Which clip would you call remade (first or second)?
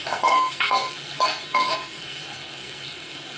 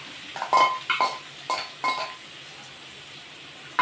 first